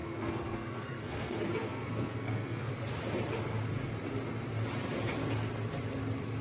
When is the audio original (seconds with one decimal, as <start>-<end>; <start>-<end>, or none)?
2.7-6.4